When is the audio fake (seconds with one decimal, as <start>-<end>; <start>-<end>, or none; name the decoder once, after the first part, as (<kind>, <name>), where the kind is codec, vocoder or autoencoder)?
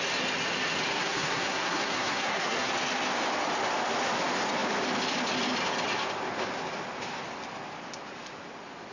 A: 0.9-2.7 (codec, SNAC)